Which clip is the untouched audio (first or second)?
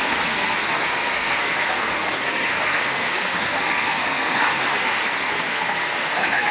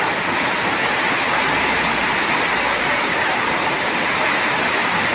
second